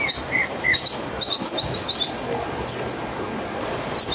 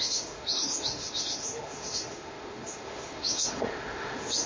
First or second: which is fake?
second